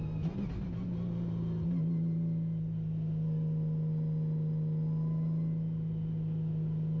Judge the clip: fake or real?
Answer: real